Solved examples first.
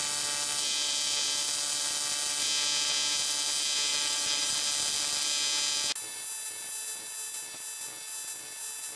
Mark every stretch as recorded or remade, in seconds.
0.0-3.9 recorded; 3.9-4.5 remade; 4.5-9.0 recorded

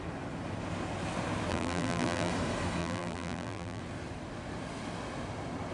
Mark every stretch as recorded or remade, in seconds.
0.0-1.5 recorded; 1.5-2.3 remade; 2.3-2.8 recorded; 2.8-3.8 remade; 3.8-5.7 recorded

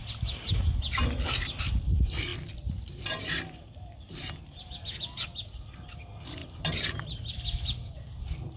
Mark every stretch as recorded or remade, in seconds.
0.0-2.3 recorded; 2.3-4.8 remade; 4.8-6.4 recorded; 6.4-8.2 remade; 8.2-8.6 recorded

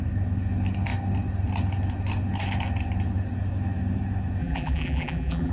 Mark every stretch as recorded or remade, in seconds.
0.0-4.4 recorded; 4.4-5.5 remade

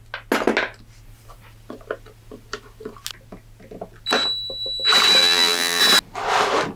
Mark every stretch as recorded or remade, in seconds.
0.0-5.2 recorded; 5.2-5.8 remade; 5.8-6.8 recorded

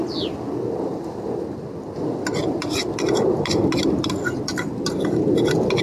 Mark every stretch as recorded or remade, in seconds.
0.0-0.9 recorded; 0.9-1.7 remade; 1.7-2.4 recorded; 2.4-5.8 remade

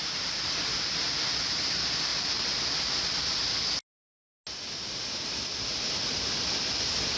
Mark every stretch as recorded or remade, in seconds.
0.0-2.1 recorded; 2.1-2.7 remade; 2.7-7.2 recorded

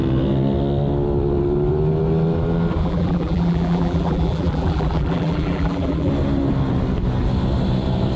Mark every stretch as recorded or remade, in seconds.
0.0-2.8 recorded; 2.8-6.1 remade; 6.1-8.2 recorded